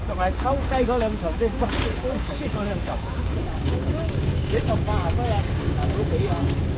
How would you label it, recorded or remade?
remade